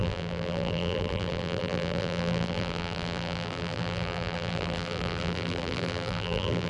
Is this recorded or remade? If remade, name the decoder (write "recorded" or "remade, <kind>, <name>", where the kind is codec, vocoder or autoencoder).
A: remade, vocoder, BigVGAN v2